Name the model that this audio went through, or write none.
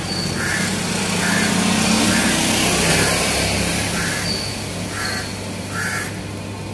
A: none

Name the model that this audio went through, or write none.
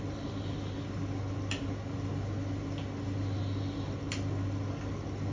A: none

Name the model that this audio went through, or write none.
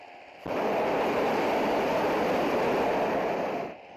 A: none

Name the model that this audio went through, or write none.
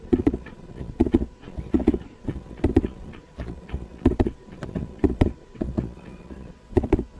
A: vocoder, Vocos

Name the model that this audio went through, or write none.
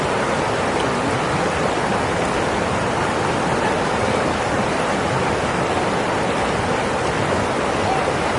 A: none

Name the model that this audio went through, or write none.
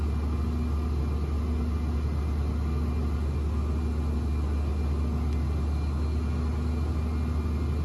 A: none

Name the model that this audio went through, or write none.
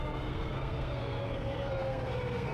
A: codec, SNAC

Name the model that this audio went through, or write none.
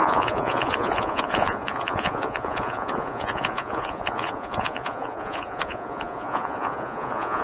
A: vocoder, Vocos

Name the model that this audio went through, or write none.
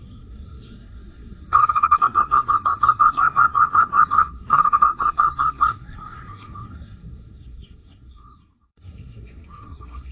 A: codec, SNAC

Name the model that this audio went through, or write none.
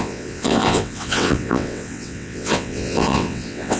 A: vocoder, WaveNeXt